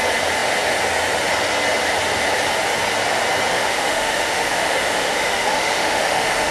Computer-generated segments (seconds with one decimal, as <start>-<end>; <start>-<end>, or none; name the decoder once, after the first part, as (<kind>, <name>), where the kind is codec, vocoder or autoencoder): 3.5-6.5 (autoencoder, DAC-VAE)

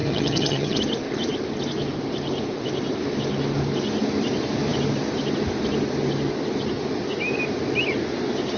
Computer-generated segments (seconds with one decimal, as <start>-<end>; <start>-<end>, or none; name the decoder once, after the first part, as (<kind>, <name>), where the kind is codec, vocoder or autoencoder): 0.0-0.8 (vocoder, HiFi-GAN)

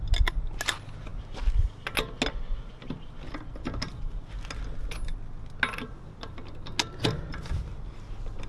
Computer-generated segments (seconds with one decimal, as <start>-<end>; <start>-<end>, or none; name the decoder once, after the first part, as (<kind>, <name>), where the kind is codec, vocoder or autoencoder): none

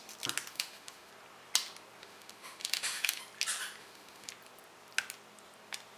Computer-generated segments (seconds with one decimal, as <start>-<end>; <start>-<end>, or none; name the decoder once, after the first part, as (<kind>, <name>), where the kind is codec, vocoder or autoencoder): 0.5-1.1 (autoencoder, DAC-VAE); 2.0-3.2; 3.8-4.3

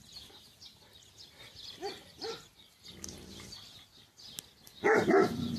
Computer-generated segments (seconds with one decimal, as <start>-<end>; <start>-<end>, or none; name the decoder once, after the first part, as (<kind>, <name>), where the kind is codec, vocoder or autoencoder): none

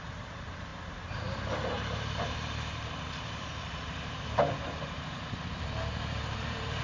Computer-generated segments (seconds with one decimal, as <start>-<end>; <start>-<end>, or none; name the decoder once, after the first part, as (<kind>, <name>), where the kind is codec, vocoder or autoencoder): 0.0-6.8 (vocoder, BigVGAN v2)